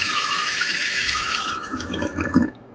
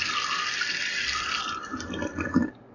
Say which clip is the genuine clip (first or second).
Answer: second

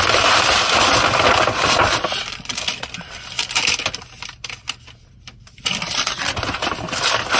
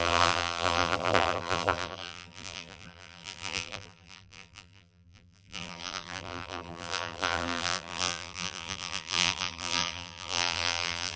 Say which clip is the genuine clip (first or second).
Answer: first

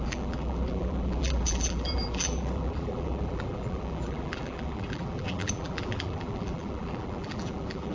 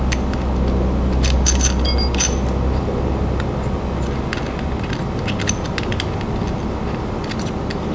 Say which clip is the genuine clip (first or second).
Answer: second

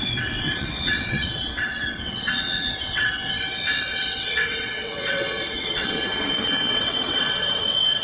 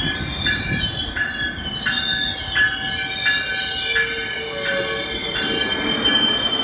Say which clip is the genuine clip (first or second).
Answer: second